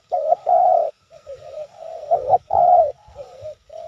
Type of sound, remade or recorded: remade